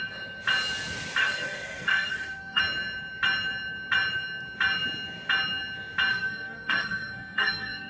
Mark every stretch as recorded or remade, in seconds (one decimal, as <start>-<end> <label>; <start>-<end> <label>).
0.0-1.2 recorded; 1.2-2.6 remade; 2.6-6.1 recorded; 6.1-7.9 remade